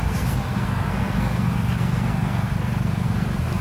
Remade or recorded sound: remade